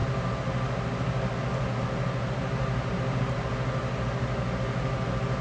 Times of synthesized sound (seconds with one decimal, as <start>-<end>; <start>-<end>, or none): none